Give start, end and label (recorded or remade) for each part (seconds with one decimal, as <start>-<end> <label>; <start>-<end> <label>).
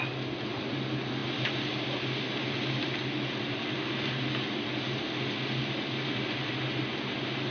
0.0-7.5 recorded